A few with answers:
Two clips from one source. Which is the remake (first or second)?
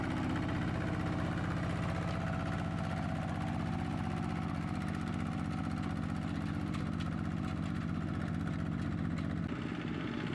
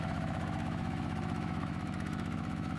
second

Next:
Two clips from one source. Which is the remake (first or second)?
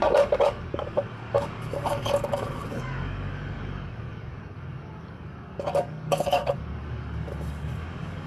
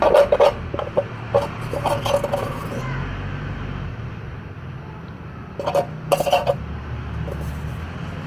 first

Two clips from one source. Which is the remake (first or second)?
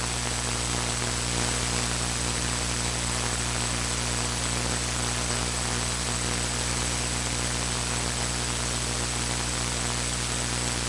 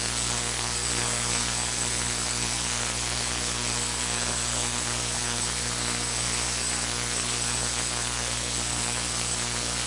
second